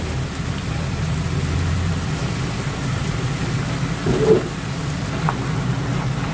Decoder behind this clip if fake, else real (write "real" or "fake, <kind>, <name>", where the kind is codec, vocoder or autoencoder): real